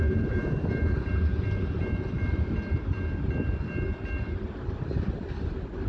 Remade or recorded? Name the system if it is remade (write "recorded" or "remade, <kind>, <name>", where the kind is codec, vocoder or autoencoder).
recorded